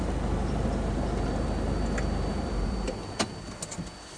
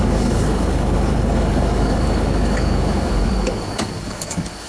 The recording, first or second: first